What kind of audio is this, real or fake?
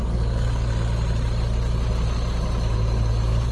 real